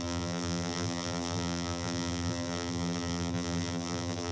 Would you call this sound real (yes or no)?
no